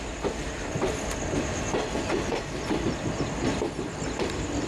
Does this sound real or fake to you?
real